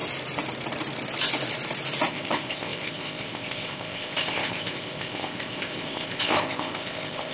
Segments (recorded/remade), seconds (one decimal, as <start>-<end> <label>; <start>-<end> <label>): 0.0-2.1 recorded; 2.1-7.3 remade